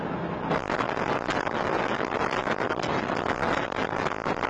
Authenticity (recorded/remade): recorded